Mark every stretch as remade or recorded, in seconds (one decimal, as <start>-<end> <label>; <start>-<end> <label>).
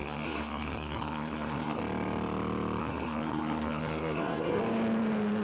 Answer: 0.0-1.8 remade; 1.8-2.8 recorded; 2.8-4.6 remade; 4.6-5.4 recorded